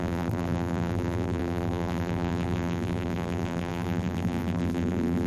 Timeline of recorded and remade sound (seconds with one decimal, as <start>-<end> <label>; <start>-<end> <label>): 0.0-5.3 remade